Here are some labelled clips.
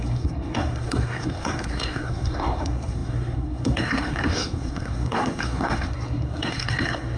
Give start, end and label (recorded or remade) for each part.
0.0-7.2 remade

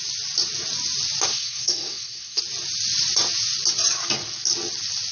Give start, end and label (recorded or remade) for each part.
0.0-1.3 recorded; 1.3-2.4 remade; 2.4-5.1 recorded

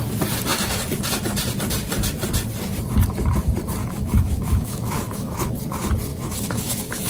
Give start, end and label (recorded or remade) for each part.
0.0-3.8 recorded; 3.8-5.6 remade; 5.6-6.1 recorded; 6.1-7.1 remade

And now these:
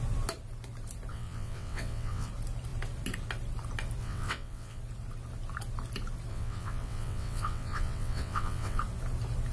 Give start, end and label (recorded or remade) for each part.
0.0-1.1 recorded; 1.1-2.3 remade; 2.3-4.0 recorded; 4.0-4.8 remade; 4.8-6.3 recorded; 6.3-8.8 remade; 8.8-9.5 recorded

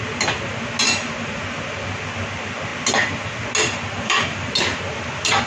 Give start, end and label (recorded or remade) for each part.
0.0-5.5 recorded

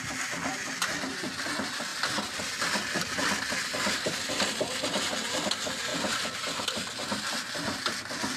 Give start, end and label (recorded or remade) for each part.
0.0-0.5 recorded; 0.5-1.3 remade; 1.3-1.9 recorded; 1.9-5.1 remade; 5.1-5.9 recorded; 5.9-6.6 remade; 6.6-8.4 recorded

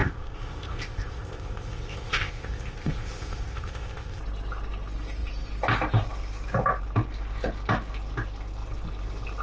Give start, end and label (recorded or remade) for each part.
0.0-4.2 remade; 4.2-9.4 recorded